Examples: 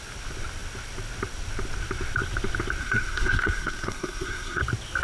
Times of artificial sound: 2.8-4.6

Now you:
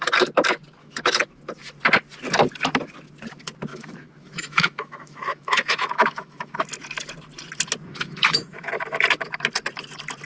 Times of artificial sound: 0.8-1.4; 3.7-6.6; 7.9-8.7

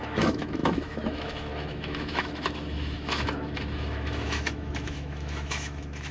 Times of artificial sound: 0.0-6.1

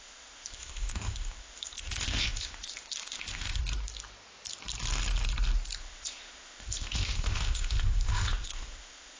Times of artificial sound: 0.0-3.6; 5.8-9.2

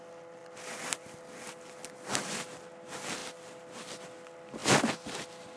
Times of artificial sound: 0.4-1.2; 4.6-5.6